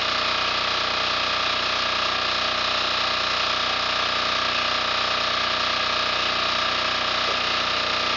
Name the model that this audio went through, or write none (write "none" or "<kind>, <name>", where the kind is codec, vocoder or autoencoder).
none